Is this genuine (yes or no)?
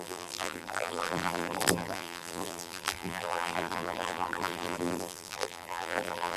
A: no